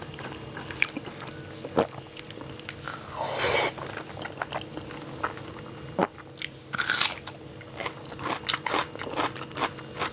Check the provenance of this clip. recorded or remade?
recorded